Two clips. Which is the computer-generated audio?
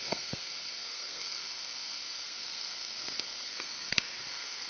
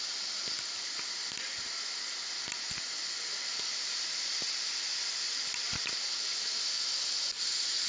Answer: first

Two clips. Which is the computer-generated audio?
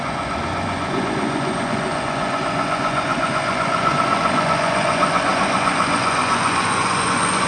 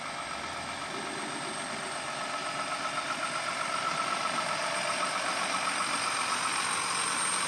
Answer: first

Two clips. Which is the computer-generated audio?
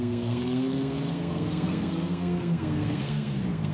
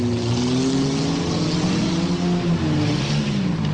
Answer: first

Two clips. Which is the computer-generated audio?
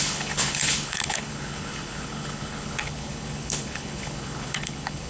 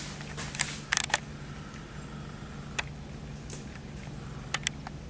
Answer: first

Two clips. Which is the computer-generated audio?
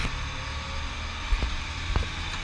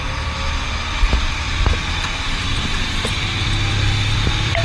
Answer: second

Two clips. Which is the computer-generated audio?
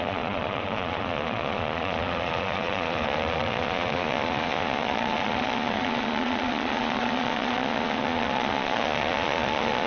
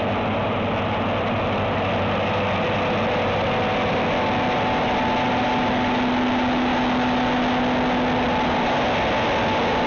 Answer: first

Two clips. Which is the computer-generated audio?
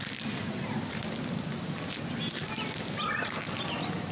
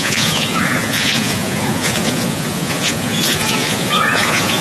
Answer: second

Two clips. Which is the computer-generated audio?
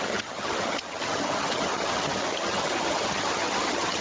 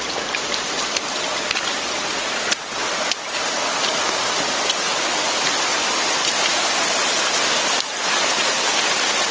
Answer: first